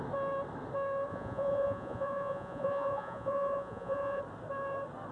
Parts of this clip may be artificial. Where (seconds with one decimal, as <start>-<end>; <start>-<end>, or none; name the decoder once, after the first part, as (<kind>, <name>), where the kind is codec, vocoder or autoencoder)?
1.1-4.2 (vocoder, Vocos)